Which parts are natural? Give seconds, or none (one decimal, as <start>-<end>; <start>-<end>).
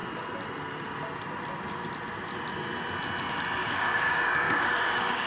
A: 0.0-3.6